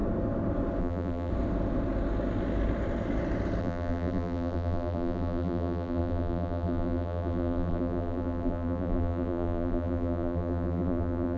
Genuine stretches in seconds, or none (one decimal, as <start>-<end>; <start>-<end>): 0.0-0.8; 1.3-3.6